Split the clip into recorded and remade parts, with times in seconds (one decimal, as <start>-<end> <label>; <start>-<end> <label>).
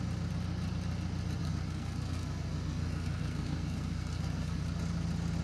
0.0-1.4 recorded; 1.4-4.6 remade; 4.6-5.4 recorded